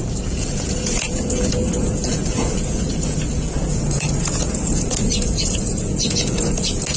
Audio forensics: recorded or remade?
remade